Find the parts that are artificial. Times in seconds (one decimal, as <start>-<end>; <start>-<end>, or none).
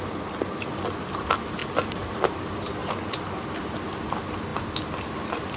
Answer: 1.6-2.2